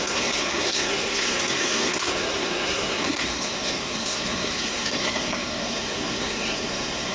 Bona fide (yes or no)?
no